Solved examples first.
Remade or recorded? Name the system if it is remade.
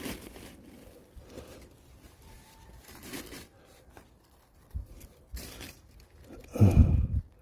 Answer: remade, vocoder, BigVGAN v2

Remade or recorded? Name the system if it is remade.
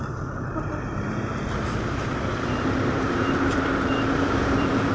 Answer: remade, vocoder, BigVGAN v2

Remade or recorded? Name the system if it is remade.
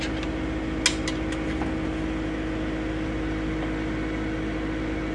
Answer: recorded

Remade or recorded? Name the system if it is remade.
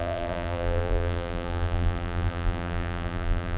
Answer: remade, vocoder, BigVGAN v2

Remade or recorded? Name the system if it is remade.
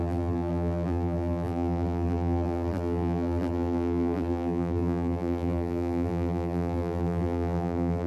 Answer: remade, vocoder, BigVGAN v2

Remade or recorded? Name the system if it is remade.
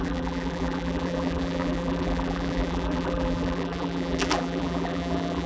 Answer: remade, vocoder, BigVGAN v2